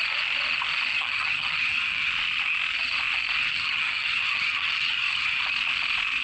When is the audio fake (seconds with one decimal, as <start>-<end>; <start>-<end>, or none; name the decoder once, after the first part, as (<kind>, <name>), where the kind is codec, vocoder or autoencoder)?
0.9-2.1 (vocoder, HiFi-GAN); 3.4-5.4

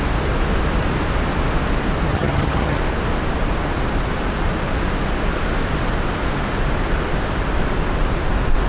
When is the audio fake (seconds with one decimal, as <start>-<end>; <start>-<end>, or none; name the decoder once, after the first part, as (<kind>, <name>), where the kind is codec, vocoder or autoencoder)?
2.1-2.8 (vocoder, HiFi-GAN)